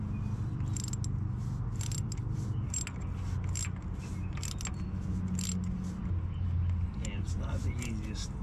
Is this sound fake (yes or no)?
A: no